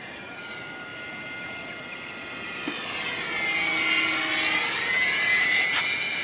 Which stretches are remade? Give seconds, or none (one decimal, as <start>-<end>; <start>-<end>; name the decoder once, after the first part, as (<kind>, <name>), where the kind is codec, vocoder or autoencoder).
0.0-0.9 (vocoder, BigVGAN v2); 4.6-6.2